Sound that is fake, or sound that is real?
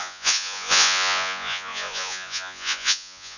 fake